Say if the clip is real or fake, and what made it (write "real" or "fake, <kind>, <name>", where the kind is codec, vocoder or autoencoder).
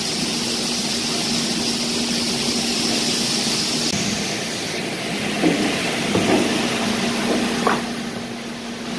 real